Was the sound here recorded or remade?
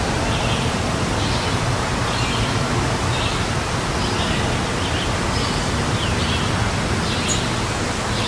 recorded